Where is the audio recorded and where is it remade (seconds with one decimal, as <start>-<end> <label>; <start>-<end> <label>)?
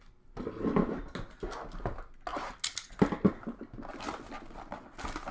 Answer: 0.0-5.3 recorded